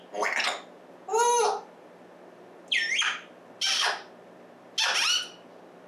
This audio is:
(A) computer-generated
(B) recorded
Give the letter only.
B